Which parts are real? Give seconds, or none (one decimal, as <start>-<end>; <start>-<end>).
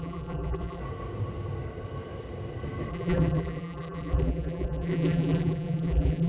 0.8-2.9